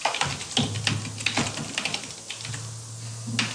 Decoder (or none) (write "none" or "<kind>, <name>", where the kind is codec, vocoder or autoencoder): none